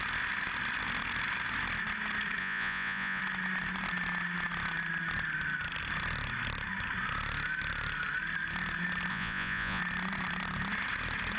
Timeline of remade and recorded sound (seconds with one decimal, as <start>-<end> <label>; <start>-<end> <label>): 0.0-2.4 recorded; 2.4-3.2 remade; 3.2-9.1 recorded; 9.1-9.8 remade; 9.8-11.4 recorded